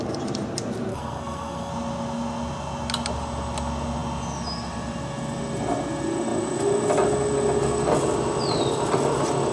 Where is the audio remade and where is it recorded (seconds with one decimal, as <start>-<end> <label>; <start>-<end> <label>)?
0.0-0.9 recorded; 0.9-1.7 remade; 1.7-9.5 recorded